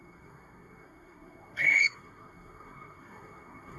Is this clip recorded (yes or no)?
no